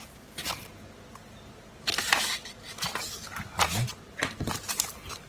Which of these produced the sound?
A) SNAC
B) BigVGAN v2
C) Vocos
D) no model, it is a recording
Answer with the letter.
D